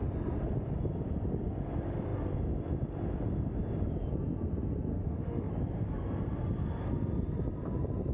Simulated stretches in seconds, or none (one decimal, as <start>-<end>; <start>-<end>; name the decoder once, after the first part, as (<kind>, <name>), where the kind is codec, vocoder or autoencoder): 4.9-5.5 (autoencoder, DAC-VAE)